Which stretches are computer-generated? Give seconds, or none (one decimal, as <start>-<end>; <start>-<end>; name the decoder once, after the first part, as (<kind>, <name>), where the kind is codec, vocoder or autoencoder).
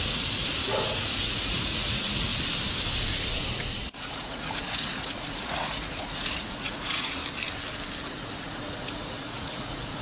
0.0-2.3 (vocoder, Vocos); 3.5-7.2; 8.1-10.0